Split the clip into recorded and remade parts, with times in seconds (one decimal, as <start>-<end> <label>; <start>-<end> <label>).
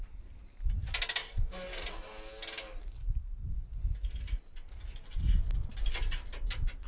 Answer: 0.0-6.9 recorded